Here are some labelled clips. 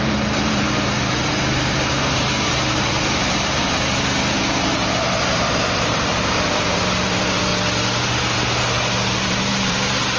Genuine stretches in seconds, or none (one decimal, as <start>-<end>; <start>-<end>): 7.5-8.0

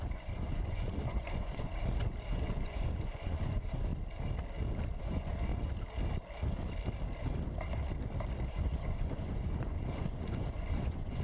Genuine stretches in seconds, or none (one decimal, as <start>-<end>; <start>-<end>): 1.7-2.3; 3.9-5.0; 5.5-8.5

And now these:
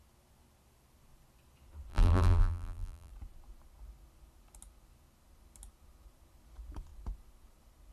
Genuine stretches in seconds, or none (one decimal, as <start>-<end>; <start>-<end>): 0.0-1.9; 3.1-7.9

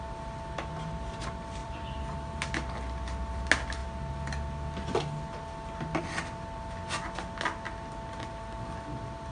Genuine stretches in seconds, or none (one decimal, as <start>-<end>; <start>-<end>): 0.0-1.6; 2.3-9.3

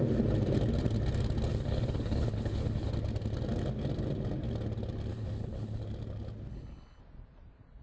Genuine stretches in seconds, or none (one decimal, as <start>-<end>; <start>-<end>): 0.0-1.5; 2.9-5.1; 5.8-6.5; 7.0-7.8

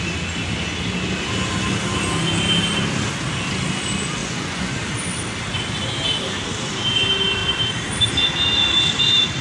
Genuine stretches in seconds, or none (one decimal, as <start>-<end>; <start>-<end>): 0.0-4.2; 4.8-9.4